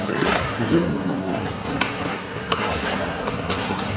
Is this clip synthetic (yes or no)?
yes